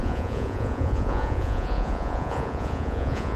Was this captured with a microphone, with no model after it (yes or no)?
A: no